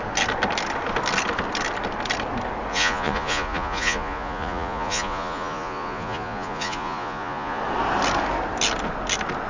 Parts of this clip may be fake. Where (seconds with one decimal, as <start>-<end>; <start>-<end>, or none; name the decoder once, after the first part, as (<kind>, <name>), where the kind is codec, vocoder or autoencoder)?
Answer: 2.7-7.6 (vocoder, Vocos)